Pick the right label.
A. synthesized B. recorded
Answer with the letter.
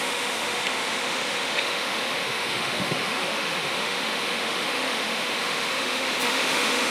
A